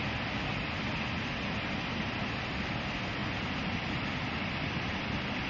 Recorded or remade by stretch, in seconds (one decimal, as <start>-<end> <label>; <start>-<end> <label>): 0.0-5.5 recorded

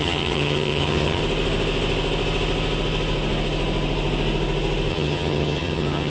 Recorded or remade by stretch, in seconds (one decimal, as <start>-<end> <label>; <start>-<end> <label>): 0.0-1.2 remade; 1.2-4.9 recorded; 4.9-6.1 remade